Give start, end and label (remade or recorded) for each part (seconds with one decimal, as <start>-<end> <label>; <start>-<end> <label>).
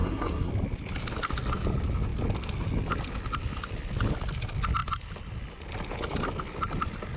0.0-0.5 remade; 0.5-7.2 recorded